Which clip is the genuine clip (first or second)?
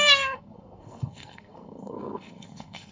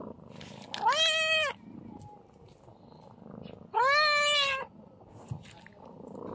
second